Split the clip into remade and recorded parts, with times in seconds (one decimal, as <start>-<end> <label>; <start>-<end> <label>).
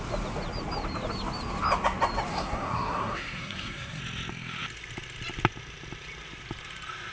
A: 0.0-2.3 recorded; 2.3-4.0 remade; 4.0-7.1 recorded